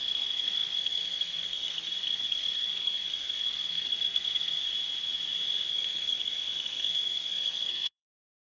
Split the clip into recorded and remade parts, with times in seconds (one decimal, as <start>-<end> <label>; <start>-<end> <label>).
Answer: 0.0-4.6 remade; 4.6-5.7 recorded; 5.7-8.6 remade